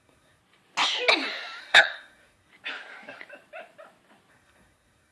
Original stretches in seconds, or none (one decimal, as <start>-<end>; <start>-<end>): 0.4-1.6; 2.5-4.3